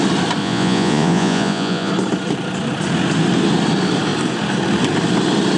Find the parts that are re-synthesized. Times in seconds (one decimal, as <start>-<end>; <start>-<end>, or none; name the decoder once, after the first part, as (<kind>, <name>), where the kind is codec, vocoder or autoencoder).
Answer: 0.4-1.9 (vocoder, Vocos)